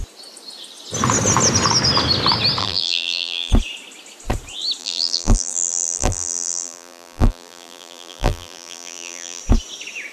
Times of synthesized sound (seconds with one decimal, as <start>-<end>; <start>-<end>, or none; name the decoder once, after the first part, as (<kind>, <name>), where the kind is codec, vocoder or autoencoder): 2.6-3.5 (vocoder, BigVGAN v2); 4.8-9.4